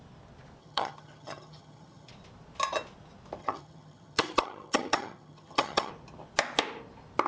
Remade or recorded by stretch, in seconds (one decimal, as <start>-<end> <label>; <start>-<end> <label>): 0.0-0.6 recorded; 0.6-2.1 remade; 2.1-3.4 recorded; 3.4-5.9 remade; 5.9-7.3 recorded